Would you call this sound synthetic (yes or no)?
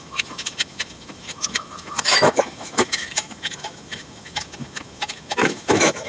yes